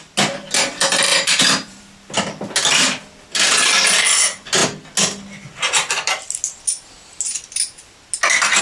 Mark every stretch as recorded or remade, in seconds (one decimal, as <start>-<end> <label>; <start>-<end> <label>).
0.0-1.1 recorded; 1.1-1.8 remade; 1.8-8.6 recorded